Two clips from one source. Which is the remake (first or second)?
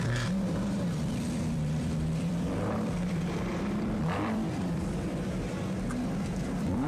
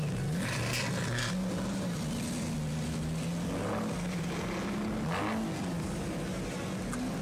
first